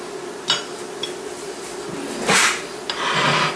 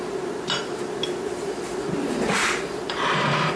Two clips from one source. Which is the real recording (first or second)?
first